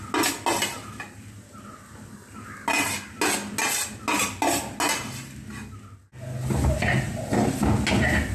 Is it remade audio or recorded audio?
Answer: recorded